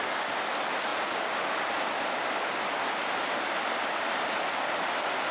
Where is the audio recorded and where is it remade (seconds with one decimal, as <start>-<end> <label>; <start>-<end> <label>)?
0.0-5.3 recorded